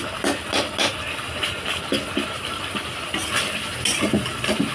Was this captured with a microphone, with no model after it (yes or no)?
yes